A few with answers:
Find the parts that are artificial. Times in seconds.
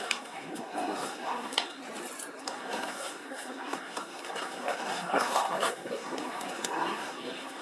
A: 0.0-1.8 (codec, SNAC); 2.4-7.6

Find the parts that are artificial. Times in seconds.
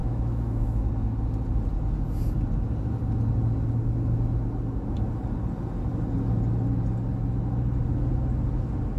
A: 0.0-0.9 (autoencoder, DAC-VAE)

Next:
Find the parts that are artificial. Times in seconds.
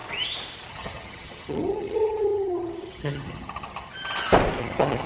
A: 0.7-3.9 (vocoder, HiFi-GAN); 4.6-5.1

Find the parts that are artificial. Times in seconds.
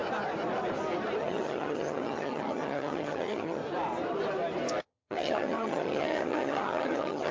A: 1.2-3.6 (vocoder, HiFi-GAN); 4.8-7.3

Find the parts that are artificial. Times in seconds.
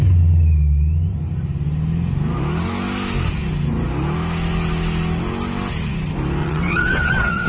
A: 6.4-7.5 (vocoder, WaveNeXt)